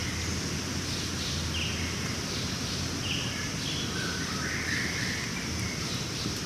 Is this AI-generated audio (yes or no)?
no